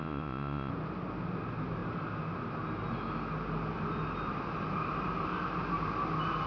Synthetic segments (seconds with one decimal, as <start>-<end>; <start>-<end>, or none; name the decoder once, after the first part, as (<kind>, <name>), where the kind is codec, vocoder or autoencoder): 0.0-0.7 (vocoder, Vocos)